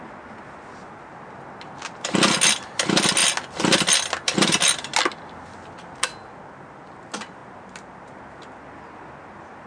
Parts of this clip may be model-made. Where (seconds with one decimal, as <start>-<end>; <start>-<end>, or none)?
none